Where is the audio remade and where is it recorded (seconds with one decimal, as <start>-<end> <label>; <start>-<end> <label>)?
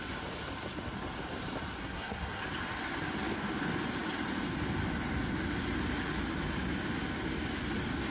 0.0-1.8 recorded; 1.8-2.4 remade; 2.4-8.1 recorded